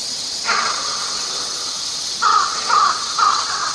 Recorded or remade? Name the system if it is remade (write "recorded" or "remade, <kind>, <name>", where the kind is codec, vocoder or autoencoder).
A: remade, vocoder, WaveNeXt